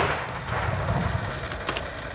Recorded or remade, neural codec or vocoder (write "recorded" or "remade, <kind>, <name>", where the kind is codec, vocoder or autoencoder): recorded